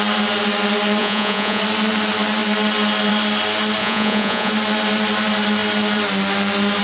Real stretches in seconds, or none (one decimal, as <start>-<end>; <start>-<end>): 0.0-1.0; 1.6-3.8; 4.5-6.8